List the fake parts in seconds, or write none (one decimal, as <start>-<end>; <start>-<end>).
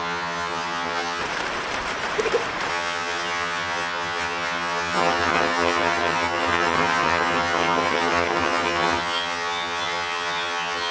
0.0-1.2; 2.7-10.9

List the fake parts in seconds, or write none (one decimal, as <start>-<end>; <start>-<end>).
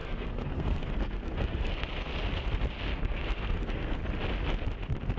0.0-2.1; 2.9-4.0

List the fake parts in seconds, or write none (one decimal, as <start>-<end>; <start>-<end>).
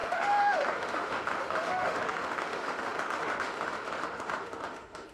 0.0-5.1